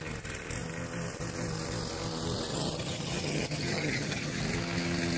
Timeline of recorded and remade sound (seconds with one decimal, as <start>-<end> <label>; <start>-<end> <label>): 0.0-2.5 recorded; 2.5-4.4 remade; 4.4-5.2 recorded